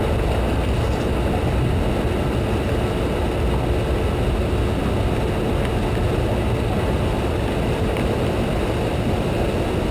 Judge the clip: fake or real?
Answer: real